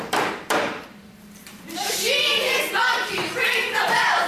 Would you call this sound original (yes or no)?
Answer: no